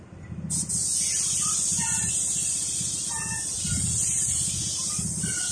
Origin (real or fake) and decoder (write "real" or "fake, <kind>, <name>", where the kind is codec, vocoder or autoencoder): real